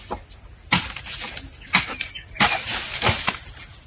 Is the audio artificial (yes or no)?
no